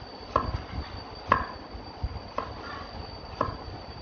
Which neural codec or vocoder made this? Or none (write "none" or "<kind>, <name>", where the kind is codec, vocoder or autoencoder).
none